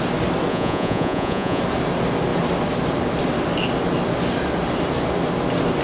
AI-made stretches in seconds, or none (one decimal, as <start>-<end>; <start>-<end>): 0.5-1.6